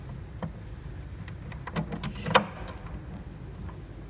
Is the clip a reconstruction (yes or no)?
no